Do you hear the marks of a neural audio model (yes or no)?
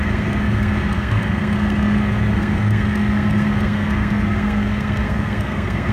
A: yes